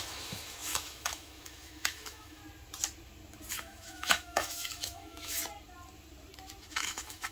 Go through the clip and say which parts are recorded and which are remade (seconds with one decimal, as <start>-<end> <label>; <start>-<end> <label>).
0.0-2.4 remade; 2.4-3.5 recorded; 3.5-5.4 remade; 5.4-6.7 recorded; 6.7-7.3 remade